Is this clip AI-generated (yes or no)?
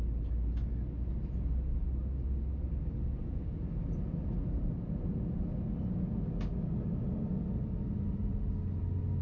no